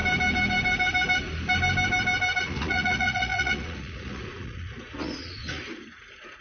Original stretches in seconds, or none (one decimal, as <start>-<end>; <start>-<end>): 0.0-2.4